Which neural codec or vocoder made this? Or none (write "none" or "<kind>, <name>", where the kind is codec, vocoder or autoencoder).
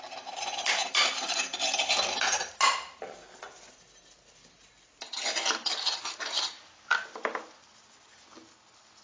none